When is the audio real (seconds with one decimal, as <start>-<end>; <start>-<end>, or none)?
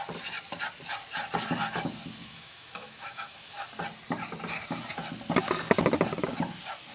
0.0-2.2; 3.7-6.9